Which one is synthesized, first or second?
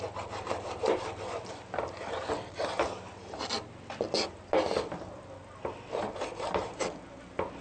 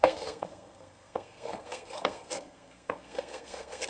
second